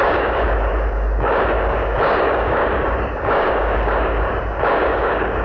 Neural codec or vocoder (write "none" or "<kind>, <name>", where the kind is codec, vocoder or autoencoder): codec, DAC